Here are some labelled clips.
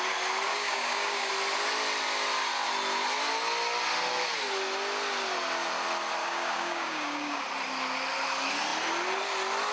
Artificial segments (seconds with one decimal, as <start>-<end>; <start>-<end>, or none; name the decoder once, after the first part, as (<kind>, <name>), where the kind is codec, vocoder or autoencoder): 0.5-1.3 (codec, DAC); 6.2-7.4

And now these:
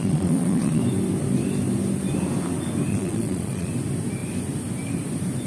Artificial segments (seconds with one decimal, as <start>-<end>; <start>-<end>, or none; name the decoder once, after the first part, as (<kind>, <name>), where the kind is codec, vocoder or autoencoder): 0.0-0.8 (vocoder, Vocos); 2.9-3.7

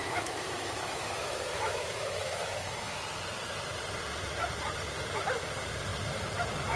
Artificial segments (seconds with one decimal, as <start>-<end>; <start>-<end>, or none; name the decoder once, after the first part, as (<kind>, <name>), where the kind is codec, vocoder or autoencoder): 0.0-3.0 (autoencoder, DAC-VAE)

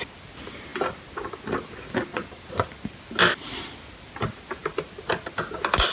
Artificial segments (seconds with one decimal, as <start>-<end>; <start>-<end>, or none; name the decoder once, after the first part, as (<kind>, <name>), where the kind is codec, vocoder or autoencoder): 2.1-2.7 (vocoder, Vocos)

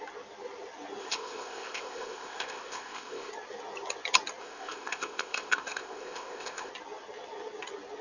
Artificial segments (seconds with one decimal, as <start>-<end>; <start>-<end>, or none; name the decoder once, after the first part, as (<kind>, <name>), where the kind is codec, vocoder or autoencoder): 1.0-3.3 (codec, ZipCodec); 4.4-6.7

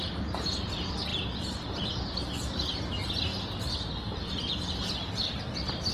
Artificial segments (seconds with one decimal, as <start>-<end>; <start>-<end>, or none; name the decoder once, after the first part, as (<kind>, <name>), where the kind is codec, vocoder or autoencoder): 1.1-2.2 (vocoder, BigVGAN v2); 3.3-4.3

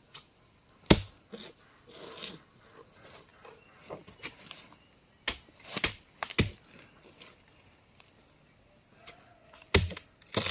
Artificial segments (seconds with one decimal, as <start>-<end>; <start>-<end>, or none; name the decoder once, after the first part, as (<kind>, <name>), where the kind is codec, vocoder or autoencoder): none